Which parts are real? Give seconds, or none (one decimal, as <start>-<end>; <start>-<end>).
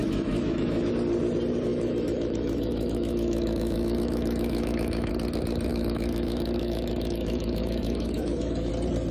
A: 0.9-1.7; 5.1-5.7; 8.7-9.1